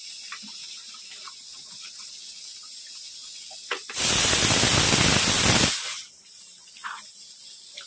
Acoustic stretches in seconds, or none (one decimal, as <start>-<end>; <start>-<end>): 0.0-1.4; 2.6-3.2; 3.9-7.9